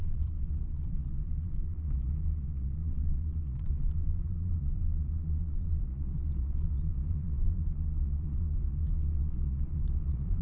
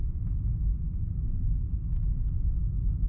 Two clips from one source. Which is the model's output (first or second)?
first